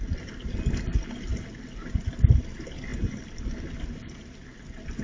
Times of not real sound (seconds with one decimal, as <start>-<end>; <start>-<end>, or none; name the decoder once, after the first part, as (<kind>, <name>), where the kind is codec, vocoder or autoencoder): none